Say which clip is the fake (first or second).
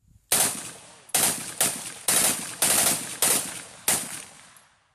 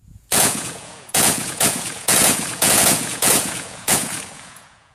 second